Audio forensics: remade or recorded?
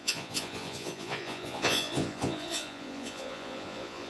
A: remade